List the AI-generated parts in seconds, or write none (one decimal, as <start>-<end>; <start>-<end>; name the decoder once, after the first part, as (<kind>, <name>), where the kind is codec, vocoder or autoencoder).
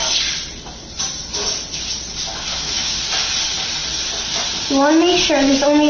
2.5-3.0 (autoencoder, DAC-VAE)